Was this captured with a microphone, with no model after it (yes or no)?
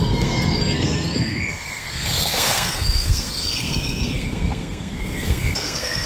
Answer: no